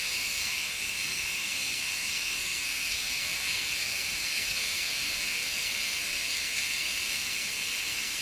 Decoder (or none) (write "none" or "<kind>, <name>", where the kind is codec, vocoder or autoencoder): codec, SNAC